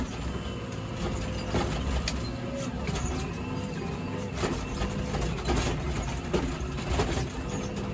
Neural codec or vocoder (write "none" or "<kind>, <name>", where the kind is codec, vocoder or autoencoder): none